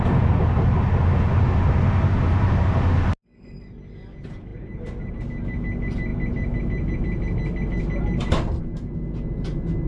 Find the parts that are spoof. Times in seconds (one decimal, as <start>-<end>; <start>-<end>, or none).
none